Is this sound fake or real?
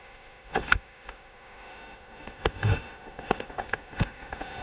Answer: fake